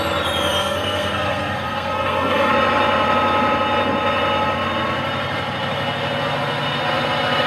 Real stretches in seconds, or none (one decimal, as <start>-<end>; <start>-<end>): 0.0-0.6; 2.5-7.5